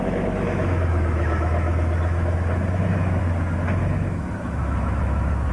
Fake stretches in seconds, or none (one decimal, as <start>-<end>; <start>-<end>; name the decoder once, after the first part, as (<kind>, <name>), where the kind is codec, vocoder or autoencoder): 0.0-3.2 (autoencoder, DAC-VAE); 3.8-5.5